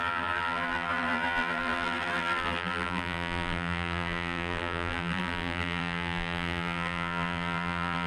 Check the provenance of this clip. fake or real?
fake